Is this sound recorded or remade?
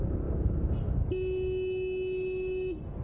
recorded